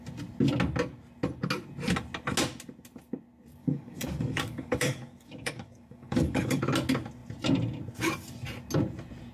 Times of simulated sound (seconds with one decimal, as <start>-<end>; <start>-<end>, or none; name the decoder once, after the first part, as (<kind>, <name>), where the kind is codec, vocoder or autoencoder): 3.6-6.6 (codec, DAC)